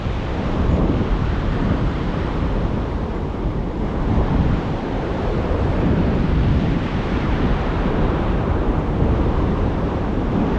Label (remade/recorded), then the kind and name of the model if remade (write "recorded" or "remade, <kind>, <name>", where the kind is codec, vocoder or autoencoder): remade, vocoder, BigVGAN v2